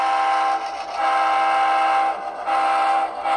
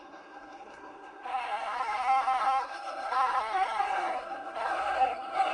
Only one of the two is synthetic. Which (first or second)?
second